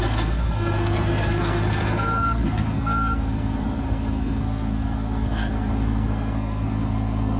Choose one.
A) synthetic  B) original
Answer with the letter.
A